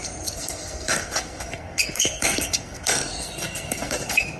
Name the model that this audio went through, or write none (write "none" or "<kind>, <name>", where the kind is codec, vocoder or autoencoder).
codec, SNAC